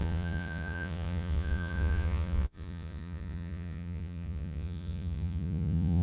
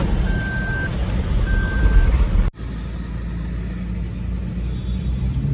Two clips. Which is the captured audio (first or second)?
second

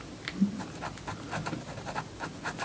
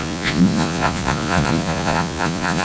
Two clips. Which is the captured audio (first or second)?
first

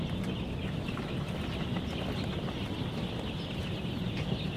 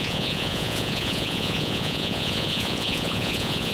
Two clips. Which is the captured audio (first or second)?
first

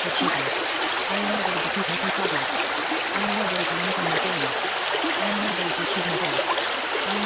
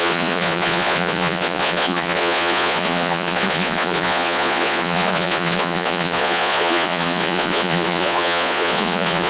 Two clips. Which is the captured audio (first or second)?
first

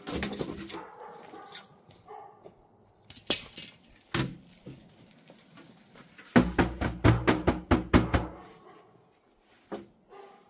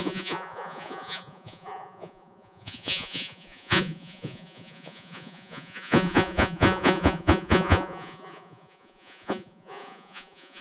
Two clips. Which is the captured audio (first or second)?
first